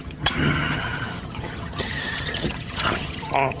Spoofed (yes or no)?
yes